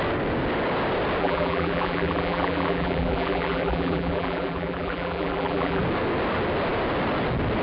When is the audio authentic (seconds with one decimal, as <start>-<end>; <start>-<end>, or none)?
0.0-1.2; 5.8-7.6